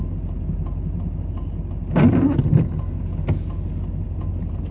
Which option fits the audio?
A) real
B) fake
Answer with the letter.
A